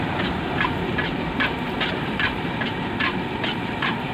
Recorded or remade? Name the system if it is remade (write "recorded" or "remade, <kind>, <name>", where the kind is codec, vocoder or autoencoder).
remade, vocoder, BigVGAN v2